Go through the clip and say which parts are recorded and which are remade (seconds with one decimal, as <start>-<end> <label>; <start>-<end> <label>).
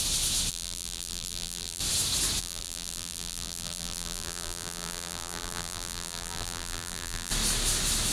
0.0-0.5 recorded; 0.5-1.8 remade; 1.8-2.4 recorded; 2.4-7.3 remade; 7.3-8.1 recorded